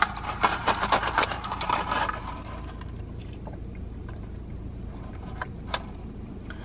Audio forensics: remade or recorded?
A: remade